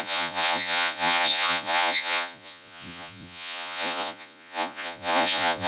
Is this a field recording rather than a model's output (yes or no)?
no